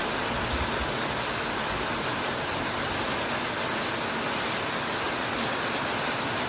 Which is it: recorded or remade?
recorded